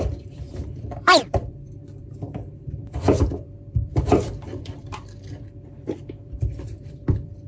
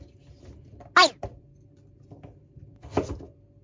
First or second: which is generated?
first